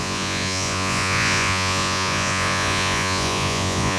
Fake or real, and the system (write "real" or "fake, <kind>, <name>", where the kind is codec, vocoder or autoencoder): fake, vocoder, Vocos